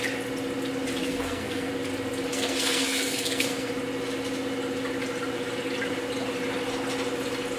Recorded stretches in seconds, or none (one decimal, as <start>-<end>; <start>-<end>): 0.0-1.0; 1.7-2.3; 3.7-7.6